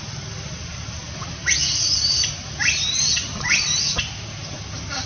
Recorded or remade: recorded